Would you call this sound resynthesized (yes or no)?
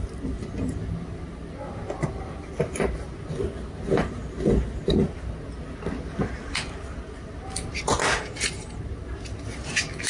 no